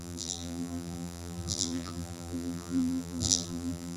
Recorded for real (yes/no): no